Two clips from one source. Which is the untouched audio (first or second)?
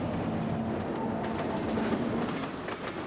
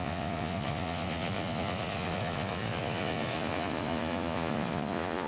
first